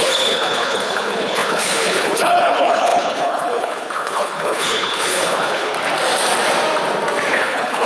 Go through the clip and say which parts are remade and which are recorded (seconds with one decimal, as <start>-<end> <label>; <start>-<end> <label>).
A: 0.0-5.7 remade; 5.7-7.3 recorded; 7.3-7.9 remade